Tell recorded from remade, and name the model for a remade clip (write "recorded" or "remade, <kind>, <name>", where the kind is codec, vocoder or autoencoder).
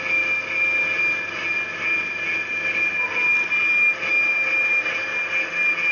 recorded